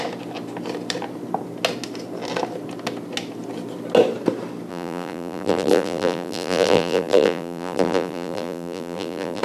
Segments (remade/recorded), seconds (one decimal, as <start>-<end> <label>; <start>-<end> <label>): 0.0-4.7 recorded; 4.7-9.4 remade